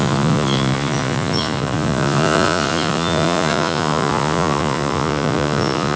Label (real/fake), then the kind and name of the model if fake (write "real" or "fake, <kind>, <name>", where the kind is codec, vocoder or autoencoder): fake, vocoder, Vocos